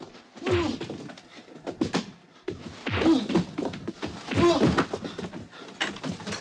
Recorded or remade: recorded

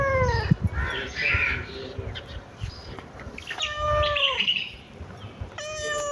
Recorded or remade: recorded